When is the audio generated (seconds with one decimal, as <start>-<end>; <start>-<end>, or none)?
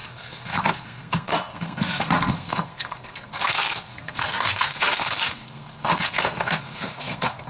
0.0-7.5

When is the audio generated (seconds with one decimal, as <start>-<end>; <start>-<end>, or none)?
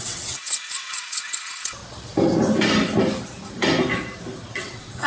0.0-1.8; 4.5-5.1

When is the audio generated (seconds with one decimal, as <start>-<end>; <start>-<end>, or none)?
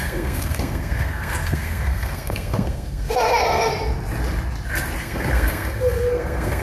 0.0-3.7; 5.0-6.6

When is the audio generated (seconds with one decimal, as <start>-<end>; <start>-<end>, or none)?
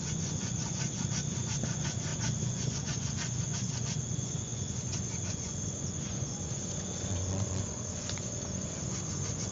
0.0-9.5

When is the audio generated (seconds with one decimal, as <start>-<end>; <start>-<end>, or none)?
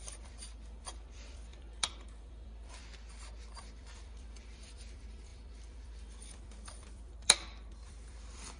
0.0-2.8; 3.4-8.6